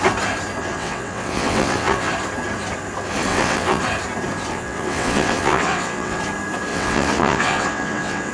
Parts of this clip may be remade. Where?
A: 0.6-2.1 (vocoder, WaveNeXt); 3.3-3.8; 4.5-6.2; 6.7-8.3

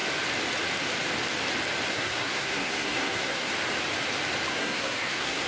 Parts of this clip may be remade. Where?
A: 1.9-3.5 (codec, SNAC); 4.5-5.5

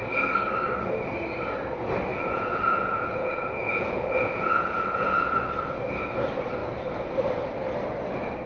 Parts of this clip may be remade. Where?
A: 2.1-5.3 (vocoder, Vocos)

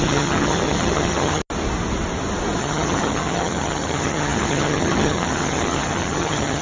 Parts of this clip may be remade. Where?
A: 0.0-1.4 (vocoder, HiFi-GAN); 2.6-6.6